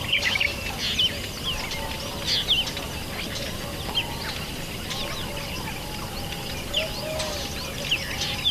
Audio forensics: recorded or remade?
recorded